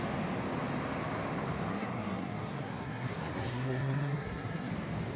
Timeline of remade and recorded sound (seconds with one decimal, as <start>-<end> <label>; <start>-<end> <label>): 0.0-1.7 recorded; 1.7-4.7 remade; 4.7-5.2 recorded